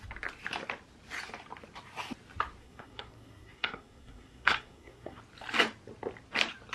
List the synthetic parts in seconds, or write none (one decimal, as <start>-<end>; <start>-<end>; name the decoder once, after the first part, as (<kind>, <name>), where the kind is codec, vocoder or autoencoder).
2.6-5.2 (codec, SNAC)